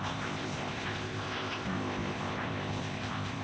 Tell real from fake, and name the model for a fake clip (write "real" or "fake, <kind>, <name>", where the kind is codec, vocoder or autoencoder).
fake, codec, ZipCodec